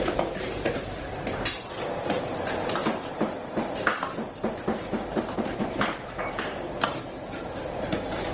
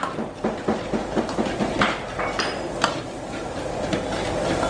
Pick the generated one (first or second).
first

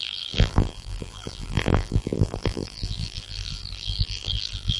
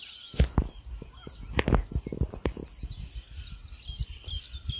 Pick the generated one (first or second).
first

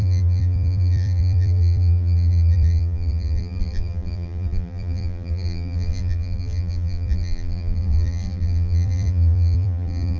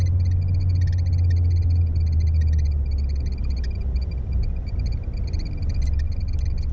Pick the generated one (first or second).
first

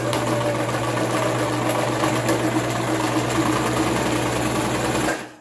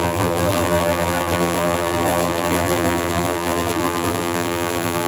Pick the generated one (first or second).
second